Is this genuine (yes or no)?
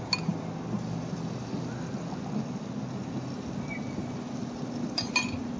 yes